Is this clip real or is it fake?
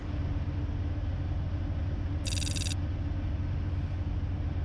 real